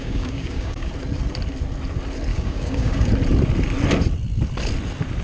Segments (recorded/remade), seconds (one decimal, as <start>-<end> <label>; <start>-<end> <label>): 0.0-0.9 remade; 0.9-2.3 recorded; 2.3-3.1 remade; 3.1-5.2 recorded